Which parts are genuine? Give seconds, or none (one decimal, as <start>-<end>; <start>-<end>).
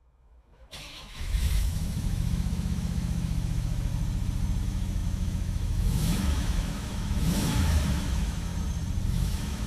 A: 3.9-4.6; 8.5-9.1